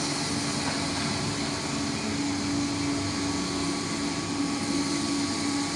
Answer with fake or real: real